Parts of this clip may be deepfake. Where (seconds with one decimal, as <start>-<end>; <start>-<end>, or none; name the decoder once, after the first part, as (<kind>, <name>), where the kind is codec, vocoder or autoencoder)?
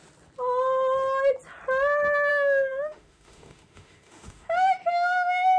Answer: 2.3-5.6 (autoencoder, DAC-VAE)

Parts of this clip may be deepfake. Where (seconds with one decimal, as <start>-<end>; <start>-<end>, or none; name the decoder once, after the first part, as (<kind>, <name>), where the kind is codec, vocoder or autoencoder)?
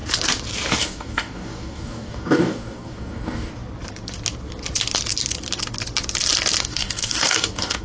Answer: 0.8-3.5 (codec, DAC); 6.6-7.8